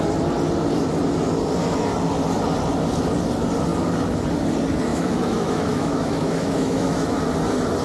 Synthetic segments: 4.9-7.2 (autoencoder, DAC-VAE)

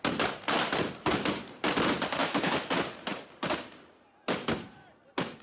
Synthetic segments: 2.2-2.7 (autoencoder, DAC-VAE)

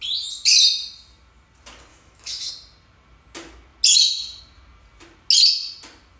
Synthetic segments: 1.9-2.5 (autoencoder, DAC-VAE)

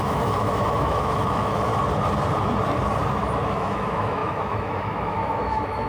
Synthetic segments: 0.0-1.7 (autoencoder, DAC-VAE); 3.4-5.9

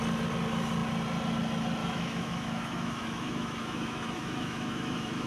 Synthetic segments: 1.8-5.3 (autoencoder, DAC-VAE)